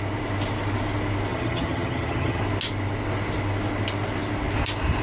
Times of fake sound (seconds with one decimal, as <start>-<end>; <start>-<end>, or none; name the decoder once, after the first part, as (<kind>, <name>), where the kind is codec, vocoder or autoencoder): 1.3-2.4 (vocoder, HiFi-GAN)